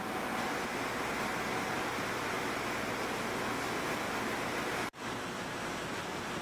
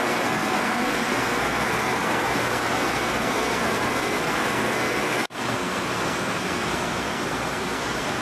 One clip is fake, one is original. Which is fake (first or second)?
second